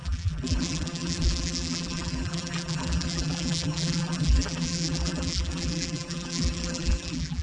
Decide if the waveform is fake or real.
fake